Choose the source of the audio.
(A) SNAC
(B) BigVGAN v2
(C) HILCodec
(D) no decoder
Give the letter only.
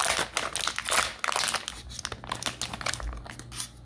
D